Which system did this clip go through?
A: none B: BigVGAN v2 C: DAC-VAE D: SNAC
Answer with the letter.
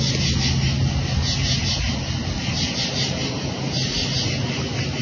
A